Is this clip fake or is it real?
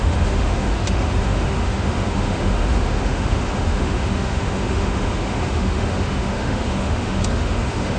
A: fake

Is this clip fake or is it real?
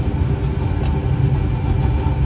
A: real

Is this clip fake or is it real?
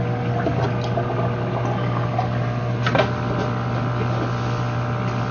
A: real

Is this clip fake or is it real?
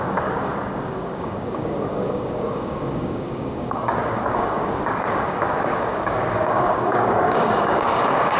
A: fake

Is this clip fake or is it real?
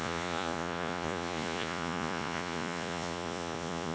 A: fake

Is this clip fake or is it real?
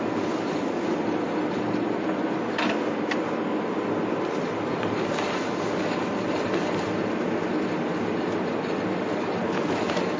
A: real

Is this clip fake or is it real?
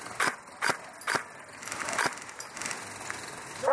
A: real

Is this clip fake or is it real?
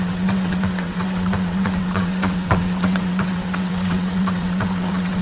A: fake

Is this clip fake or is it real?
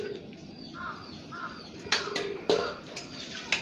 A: real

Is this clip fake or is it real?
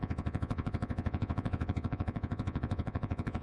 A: fake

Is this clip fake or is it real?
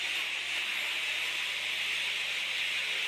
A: real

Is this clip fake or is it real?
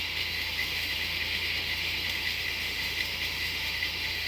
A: fake